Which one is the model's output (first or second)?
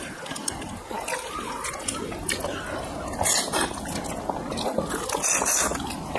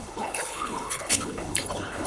second